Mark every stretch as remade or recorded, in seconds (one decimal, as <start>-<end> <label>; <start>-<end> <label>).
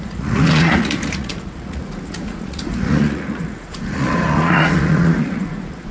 0.0-5.9 remade